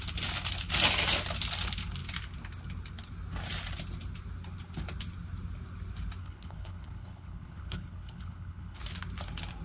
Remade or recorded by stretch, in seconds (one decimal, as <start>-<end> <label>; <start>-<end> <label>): 0.0-6.2 recorded; 6.2-8.8 remade; 8.8-9.6 recorded